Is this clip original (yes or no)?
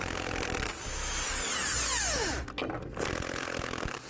yes